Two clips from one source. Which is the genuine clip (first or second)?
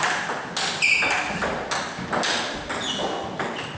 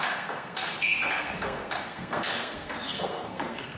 first